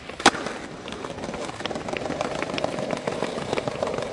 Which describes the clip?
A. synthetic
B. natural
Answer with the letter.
B